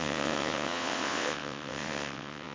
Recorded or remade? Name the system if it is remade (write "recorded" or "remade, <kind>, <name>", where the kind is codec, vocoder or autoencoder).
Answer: remade, vocoder, WaveNeXt